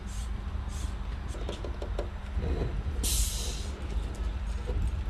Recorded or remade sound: recorded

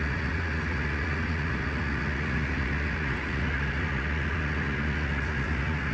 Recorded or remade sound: remade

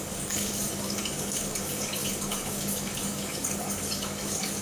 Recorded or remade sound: remade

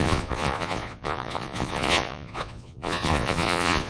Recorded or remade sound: remade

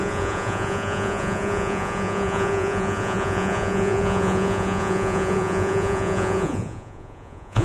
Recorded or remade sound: remade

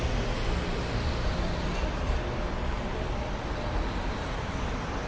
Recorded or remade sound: recorded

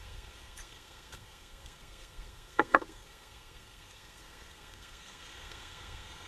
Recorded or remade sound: remade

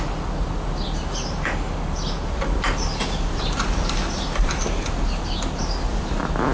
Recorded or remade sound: recorded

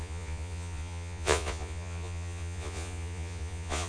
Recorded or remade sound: remade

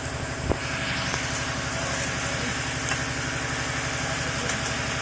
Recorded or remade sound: recorded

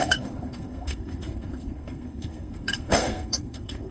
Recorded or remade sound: remade